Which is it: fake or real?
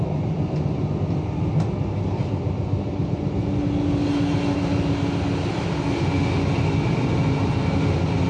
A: real